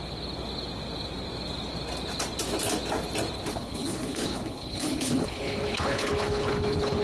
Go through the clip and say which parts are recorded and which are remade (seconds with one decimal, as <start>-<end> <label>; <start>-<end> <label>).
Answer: 0.0-3.5 recorded; 3.5-7.0 remade